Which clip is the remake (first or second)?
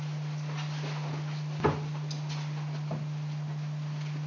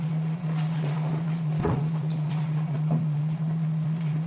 second